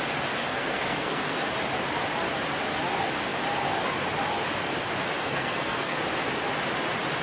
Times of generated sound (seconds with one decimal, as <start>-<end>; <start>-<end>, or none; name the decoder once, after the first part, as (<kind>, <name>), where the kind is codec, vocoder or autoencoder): 0.4-1.5 (codec, SNAC); 5.2-6.0